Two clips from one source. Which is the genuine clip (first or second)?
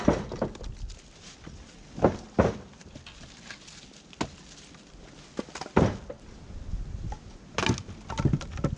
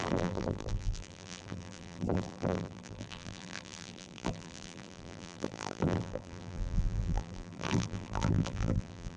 first